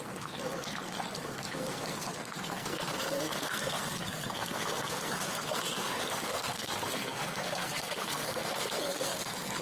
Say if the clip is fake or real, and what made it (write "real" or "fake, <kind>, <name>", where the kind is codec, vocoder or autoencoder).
fake, codec, SNAC